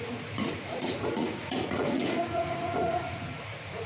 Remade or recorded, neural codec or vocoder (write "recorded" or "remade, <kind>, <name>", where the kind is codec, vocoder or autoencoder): remade, vocoder, Vocos